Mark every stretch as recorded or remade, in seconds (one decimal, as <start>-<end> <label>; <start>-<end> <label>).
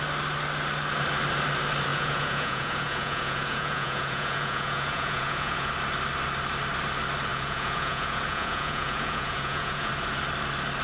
0.0-1.9 recorded; 1.9-5.7 remade; 5.7-7.3 recorded; 7.3-9.9 remade; 9.9-10.8 recorded